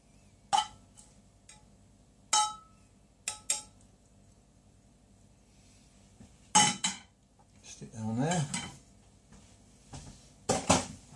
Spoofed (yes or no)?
no